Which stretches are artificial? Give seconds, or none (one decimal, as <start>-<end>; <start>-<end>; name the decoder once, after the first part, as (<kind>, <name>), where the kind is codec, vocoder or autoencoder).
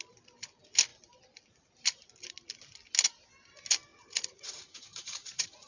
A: 3.9-5.7 (vocoder, Vocos)